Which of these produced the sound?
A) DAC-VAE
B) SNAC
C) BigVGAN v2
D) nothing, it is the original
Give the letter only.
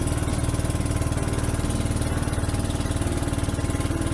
D